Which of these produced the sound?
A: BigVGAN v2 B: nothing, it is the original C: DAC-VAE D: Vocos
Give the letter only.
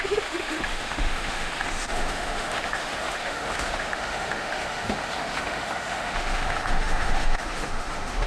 C